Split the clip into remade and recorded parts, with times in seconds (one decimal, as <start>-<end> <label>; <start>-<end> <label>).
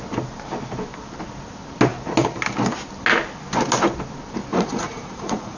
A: 0.0-4.5 recorded; 4.5-5.6 remade